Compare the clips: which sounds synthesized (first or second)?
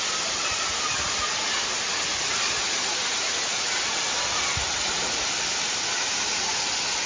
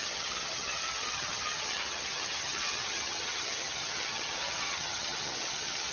second